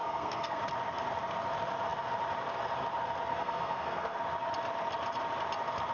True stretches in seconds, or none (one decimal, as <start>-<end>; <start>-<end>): 0.6-3.3; 4.2-5.9